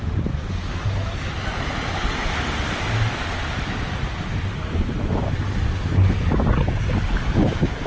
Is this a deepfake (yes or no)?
no